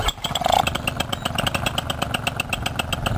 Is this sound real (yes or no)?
yes